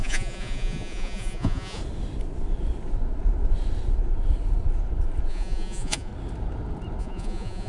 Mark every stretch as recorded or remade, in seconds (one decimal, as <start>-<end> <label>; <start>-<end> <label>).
0.0-1.8 remade; 1.8-5.3 recorded; 5.3-6.1 remade; 6.1-7.0 recorded; 7.0-7.7 remade

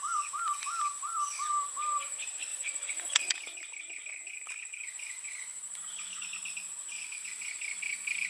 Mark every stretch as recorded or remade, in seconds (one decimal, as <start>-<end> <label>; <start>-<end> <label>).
0.0-2.5 recorded; 2.5-3.4 remade; 3.4-8.3 recorded

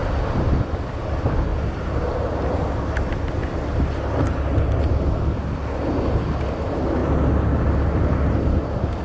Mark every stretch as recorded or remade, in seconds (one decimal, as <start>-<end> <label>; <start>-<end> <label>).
0.0-9.0 recorded

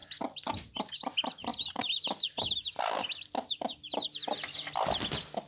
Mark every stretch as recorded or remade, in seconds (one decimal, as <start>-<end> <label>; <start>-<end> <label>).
0.0-5.5 recorded

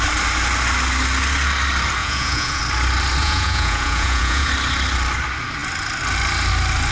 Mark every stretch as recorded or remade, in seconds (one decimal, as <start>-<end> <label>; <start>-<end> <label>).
0.0-2.0 recorded; 2.0-2.6 remade; 2.6-3.2 recorded; 3.2-4.5 remade; 4.5-6.9 recorded

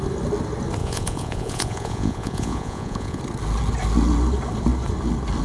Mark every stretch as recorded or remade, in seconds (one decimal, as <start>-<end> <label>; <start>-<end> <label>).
0.0-0.8 recorded; 0.8-3.2 remade; 3.2-5.4 recorded

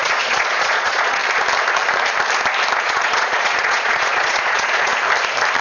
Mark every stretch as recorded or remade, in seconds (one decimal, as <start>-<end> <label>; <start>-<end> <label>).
0.0-1.2 remade; 1.2-2.8 recorded; 2.8-4.9 remade; 4.9-5.6 recorded